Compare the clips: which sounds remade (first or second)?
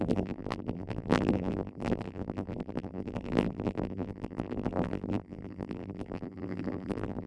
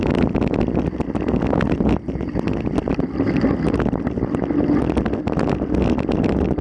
first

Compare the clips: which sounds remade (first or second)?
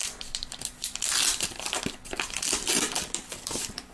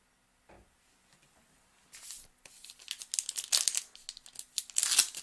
first